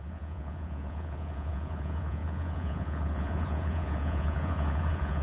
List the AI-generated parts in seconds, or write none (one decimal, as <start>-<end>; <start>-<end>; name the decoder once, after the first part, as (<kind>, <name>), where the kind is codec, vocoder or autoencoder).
0.0-5.2 (vocoder, Vocos)